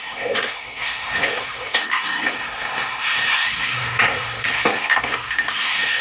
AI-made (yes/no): yes